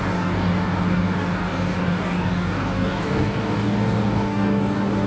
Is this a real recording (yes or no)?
no